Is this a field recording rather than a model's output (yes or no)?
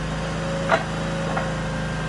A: yes